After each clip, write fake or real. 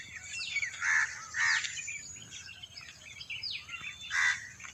fake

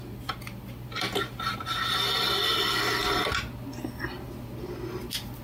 real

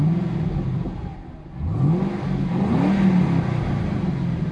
real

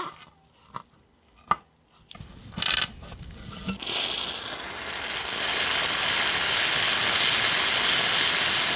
real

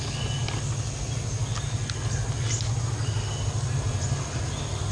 real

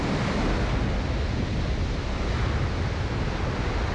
real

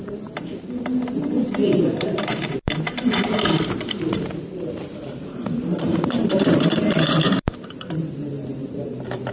fake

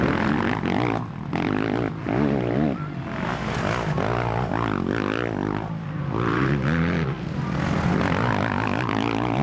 real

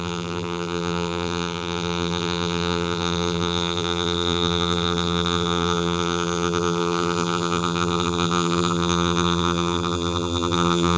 fake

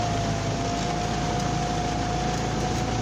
real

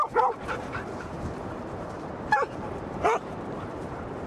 fake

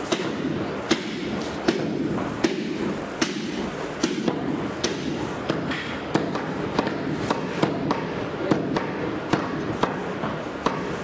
real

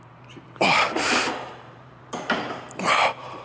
fake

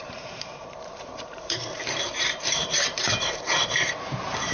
fake